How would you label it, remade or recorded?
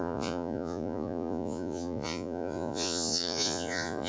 remade